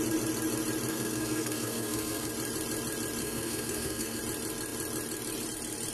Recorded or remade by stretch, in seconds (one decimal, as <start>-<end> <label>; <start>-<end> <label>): 0.0-0.9 recorded; 0.9-2.3 remade; 2.3-3.2 recorded; 3.2-4.2 remade; 4.2-5.9 recorded